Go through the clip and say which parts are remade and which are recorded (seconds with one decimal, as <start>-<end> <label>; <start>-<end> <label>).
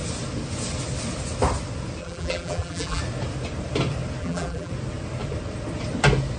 0.0-2.0 recorded; 2.0-3.0 remade; 3.0-4.2 recorded; 4.2-4.7 remade; 4.7-6.4 recorded